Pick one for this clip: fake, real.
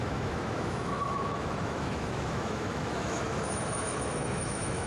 fake